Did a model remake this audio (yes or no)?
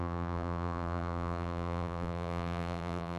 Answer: yes